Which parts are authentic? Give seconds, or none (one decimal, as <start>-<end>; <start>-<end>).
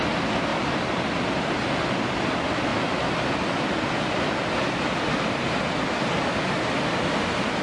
0.0-0.5; 1.2-7.6